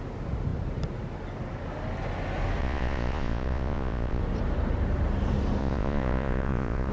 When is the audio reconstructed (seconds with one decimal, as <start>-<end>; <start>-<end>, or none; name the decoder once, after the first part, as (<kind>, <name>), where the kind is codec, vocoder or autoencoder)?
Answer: 2.6-4.2 (vocoder, Vocos); 5.6-6.9